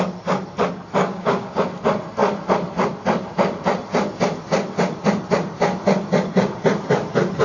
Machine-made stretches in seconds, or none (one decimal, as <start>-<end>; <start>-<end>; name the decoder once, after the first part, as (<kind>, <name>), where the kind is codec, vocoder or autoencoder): 1.0-1.6 (codec, DAC)